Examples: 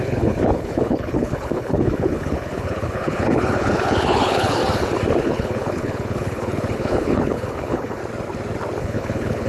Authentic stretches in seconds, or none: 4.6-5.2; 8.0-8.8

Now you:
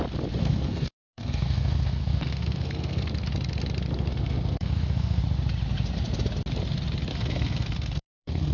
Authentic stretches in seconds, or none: 0.0-0.4; 3.1-4.1; 5.2-7.1

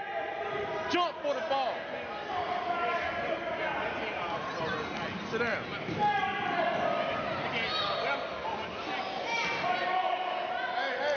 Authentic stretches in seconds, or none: 0.0-11.2

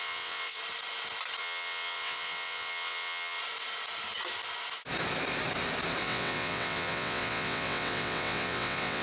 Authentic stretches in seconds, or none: 0.6-1.4; 3.4-6.0

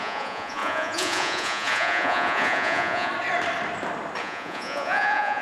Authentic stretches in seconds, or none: 3.1-4.2

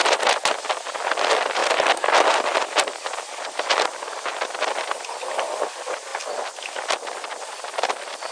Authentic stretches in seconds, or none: 0.0-8.3

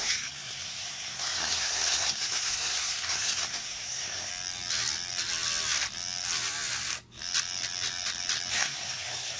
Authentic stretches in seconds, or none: 4.3-8.5

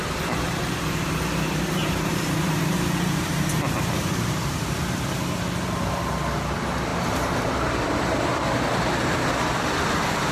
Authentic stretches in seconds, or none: 0.0-1.8; 4.9-6.9; 7.7-10.3